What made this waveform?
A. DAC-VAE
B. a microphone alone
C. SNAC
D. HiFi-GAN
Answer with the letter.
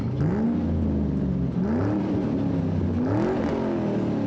B